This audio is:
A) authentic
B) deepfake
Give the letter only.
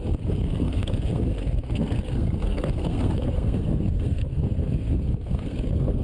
B